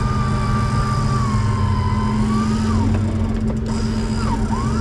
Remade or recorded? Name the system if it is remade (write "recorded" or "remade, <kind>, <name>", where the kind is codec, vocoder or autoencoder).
recorded